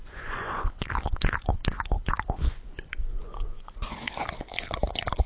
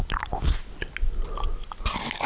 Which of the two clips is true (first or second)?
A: second